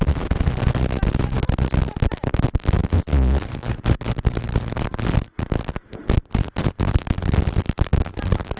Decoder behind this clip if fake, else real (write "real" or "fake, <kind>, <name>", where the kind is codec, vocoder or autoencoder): real